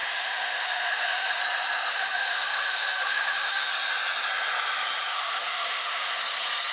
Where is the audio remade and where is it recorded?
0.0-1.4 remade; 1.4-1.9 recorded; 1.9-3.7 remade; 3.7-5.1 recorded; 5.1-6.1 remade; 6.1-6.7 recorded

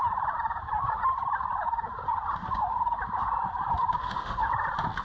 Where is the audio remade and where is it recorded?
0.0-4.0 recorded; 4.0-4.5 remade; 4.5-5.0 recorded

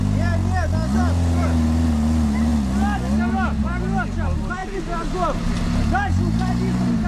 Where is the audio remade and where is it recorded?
0.0-7.1 recorded